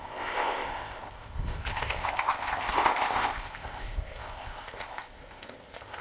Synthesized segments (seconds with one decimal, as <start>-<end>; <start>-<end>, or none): 0.0-6.0